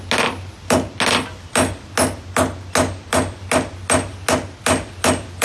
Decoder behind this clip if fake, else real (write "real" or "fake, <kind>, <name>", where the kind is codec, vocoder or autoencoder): real